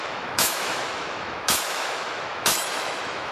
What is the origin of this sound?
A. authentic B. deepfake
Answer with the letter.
B